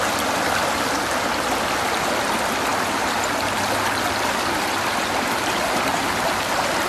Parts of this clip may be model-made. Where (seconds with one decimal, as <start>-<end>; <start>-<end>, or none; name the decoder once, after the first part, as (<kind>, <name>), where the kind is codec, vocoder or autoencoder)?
none